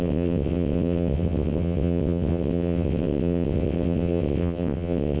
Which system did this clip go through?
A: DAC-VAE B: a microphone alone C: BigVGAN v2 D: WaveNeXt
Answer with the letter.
D